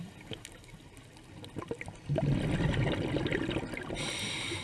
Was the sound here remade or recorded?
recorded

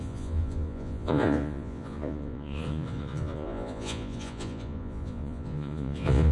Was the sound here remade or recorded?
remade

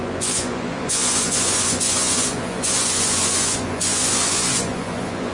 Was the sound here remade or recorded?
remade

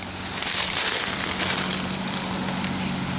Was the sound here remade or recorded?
recorded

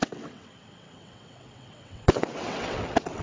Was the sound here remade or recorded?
remade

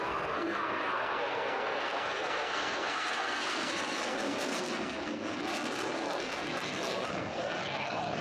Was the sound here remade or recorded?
remade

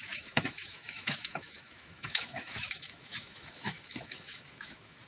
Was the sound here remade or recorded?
remade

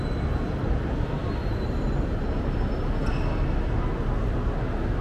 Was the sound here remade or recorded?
recorded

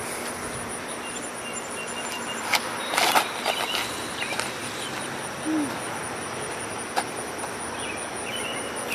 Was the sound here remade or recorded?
recorded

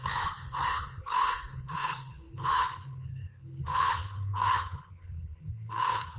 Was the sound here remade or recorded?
remade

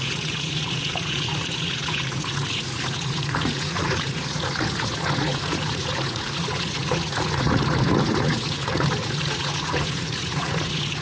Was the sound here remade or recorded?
remade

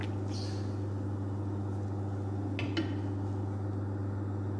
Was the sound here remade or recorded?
recorded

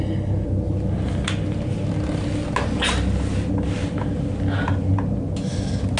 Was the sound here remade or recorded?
recorded